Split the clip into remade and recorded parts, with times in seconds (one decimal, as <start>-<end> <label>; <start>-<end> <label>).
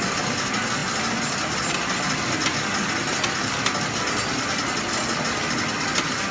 0.0-6.3 recorded